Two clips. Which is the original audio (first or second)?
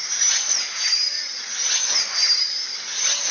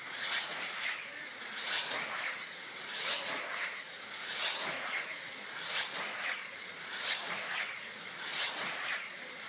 first